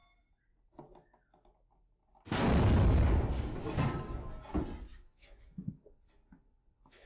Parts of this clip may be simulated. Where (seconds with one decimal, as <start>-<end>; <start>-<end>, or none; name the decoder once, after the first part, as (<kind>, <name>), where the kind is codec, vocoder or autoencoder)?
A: 4.9-5.8 (autoencoder, DAC-VAE)